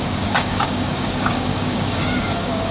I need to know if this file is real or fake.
fake